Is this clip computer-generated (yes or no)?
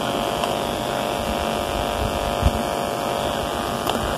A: no